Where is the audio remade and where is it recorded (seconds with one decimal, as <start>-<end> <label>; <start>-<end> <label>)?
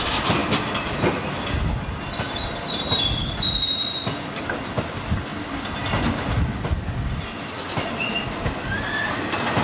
0.0-9.6 recorded